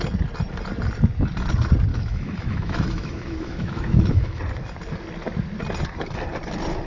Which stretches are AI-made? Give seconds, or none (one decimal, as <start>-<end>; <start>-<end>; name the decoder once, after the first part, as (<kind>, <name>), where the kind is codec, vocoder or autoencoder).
1.9-4.4 (autoencoder, DAC-VAE)